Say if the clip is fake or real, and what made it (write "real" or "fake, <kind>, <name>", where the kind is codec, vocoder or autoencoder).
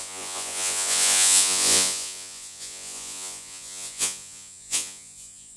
fake, vocoder, Vocos